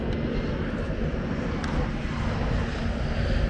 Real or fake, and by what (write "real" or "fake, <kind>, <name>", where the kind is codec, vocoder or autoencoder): real